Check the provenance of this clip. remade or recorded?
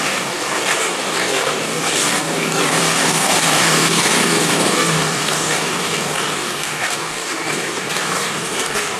remade